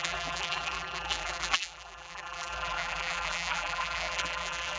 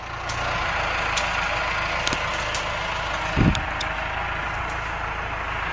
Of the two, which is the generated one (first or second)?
first